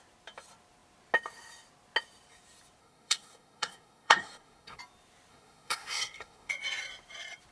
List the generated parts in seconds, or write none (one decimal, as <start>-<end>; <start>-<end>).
2.8-4.8; 5.3-6.5